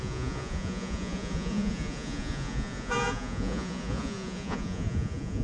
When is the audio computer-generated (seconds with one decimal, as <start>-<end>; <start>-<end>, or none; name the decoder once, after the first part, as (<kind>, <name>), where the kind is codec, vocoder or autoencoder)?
0.0-5.4 (vocoder, Vocos)